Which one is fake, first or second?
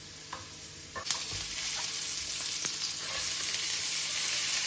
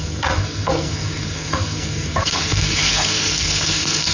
second